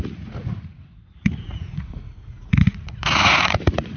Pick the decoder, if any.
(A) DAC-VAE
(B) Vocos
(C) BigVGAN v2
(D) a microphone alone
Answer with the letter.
B